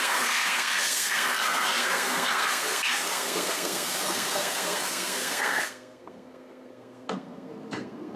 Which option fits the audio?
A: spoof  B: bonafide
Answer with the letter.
A